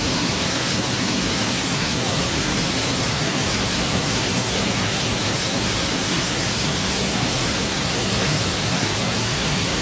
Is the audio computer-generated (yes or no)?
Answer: yes